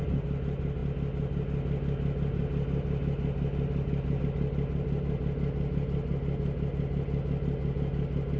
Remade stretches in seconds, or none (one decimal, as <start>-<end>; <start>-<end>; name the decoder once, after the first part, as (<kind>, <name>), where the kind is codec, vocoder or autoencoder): none